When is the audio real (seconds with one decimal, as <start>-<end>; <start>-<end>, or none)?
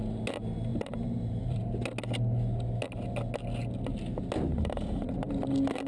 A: 0.0-0.7; 1.7-4.5; 5.4-5.9